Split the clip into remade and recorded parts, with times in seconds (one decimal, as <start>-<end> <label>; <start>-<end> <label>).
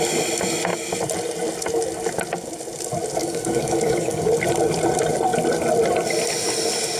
0.0-3.2 recorded; 3.2-4.3 remade; 4.3-7.0 recorded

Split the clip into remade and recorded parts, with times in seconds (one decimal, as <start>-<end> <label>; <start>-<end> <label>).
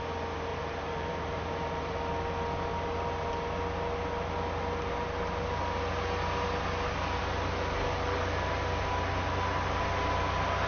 0.0-0.5 recorded; 0.5-2.0 remade; 2.0-10.7 recorded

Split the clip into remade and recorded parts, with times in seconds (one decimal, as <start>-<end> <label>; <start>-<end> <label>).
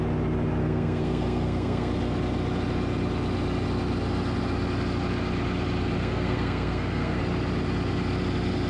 0.0-0.6 recorded; 0.6-1.9 remade; 1.9-6.0 recorded; 6.0-7.2 remade; 7.2-8.7 recorded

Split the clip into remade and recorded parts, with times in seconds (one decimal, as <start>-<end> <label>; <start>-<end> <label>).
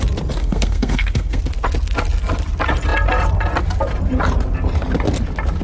0.0-0.4 recorded; 0.4-1.4 remade; 1.4-5.6 recorded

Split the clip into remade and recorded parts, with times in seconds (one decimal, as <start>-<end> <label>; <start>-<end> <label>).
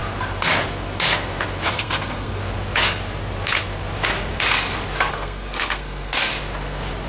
0.0-1.7 recorded; 1.7-2.4 remade; 2.4-5.1 recorded; 5.1-6.3 remade; 6.3-7.1 recorded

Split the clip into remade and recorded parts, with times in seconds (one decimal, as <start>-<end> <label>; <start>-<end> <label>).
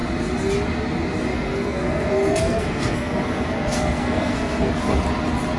0.0-1.3 recorded; 1.3-4.7 remade; 4.7-5.6 recorded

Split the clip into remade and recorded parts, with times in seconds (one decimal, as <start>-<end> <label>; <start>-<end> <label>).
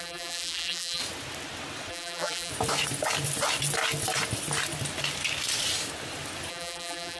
0.0-1.0 remade; 1.0-1.9 recorded; 1.9-2.5 remade; 2.5-6.5 recorded; 6.5-7.2 remade